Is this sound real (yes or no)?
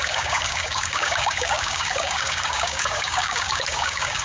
no